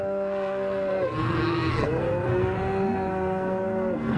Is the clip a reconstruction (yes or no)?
yes